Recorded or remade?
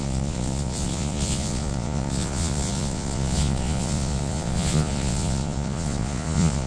remade